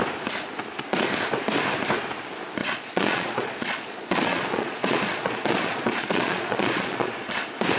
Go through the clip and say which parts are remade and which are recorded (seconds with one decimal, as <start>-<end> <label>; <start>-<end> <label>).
0.0-2.6 recorded; 2.6-7.3 remade; 7.3-7.8 recorded